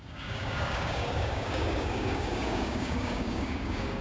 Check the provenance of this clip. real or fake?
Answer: fake